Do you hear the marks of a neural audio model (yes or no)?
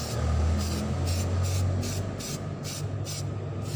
no